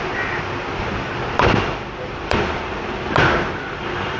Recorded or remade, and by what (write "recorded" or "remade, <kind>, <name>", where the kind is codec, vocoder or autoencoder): recorded